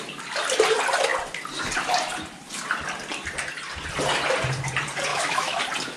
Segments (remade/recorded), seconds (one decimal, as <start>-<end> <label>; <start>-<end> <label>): 0.0-5.1 recorded; 5.1-5.6 remade; 5.6-6.0 recorded